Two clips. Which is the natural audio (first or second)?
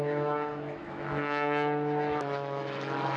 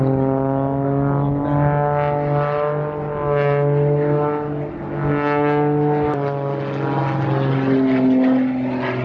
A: second